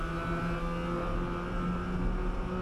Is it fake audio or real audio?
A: real